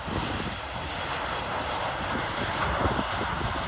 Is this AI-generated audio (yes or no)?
no